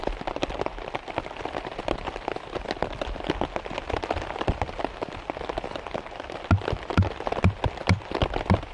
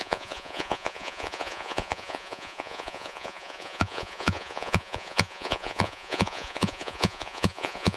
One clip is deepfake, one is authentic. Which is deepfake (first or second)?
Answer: second